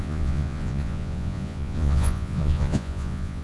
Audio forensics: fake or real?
fake